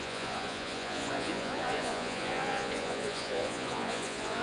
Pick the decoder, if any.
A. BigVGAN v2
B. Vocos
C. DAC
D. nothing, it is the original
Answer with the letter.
B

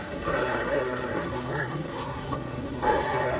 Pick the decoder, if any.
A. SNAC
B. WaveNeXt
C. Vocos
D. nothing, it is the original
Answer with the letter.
A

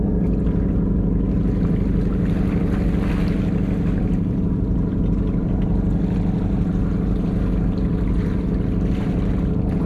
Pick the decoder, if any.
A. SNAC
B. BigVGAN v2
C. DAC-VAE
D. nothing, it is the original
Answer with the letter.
D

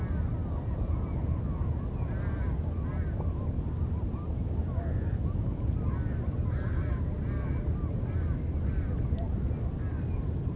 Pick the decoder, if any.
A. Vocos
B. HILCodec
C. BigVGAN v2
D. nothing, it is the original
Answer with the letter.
D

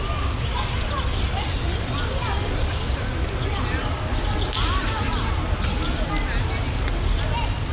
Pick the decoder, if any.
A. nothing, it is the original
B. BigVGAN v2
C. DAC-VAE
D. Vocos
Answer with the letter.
A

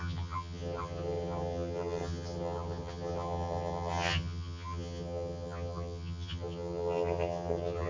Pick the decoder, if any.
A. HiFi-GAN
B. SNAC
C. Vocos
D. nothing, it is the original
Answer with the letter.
A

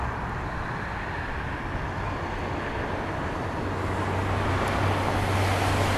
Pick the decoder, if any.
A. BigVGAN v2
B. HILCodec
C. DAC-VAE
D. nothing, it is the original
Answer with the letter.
D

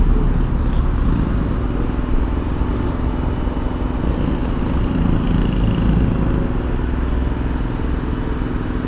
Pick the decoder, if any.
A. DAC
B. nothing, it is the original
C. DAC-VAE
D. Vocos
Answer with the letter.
B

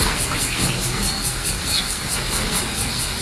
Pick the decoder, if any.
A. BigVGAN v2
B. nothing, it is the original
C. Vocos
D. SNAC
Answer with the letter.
D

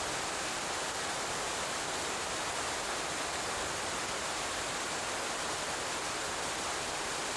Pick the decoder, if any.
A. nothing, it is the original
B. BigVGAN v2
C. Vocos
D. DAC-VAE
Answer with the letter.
A